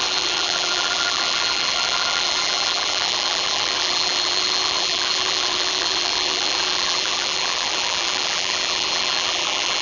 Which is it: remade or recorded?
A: remade